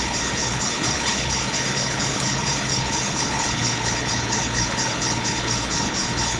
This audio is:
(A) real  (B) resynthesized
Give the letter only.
B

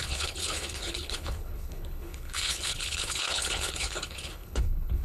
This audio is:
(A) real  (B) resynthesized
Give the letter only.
B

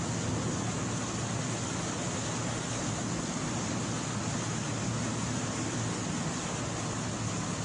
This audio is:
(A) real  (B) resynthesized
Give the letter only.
A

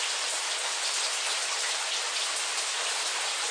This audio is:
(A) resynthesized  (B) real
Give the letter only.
B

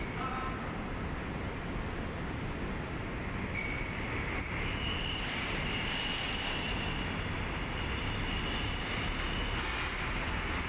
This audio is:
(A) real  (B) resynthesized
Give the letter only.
A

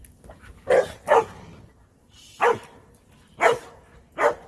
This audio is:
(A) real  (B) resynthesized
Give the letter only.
A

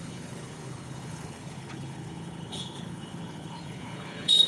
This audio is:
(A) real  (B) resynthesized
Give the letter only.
B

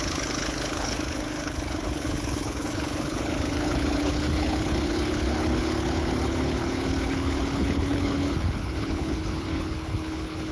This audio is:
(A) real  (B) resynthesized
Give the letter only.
B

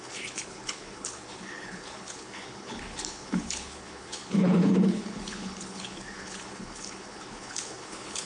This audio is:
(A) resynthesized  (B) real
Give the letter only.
A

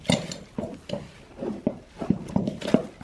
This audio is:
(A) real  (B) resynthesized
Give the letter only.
A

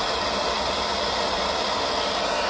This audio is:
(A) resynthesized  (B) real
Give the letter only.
B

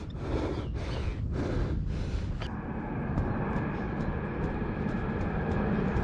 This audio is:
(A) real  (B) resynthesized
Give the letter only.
A